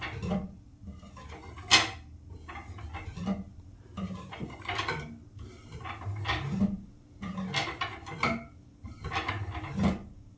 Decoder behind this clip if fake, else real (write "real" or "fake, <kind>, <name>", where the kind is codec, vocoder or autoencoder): real